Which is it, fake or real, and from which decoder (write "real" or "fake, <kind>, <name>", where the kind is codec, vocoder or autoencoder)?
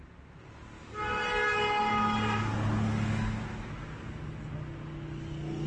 real